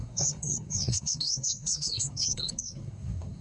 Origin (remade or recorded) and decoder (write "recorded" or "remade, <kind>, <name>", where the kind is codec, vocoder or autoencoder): remade, codec, SNAC